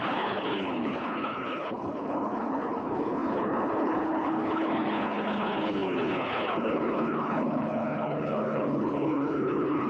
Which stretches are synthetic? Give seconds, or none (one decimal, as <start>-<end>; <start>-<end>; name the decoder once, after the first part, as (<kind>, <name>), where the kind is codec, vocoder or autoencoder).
0.0-9.9 (codec, HILCodec)